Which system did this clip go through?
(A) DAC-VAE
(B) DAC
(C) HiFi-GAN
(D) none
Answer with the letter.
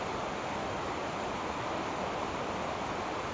D